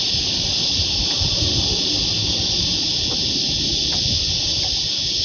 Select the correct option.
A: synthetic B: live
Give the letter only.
B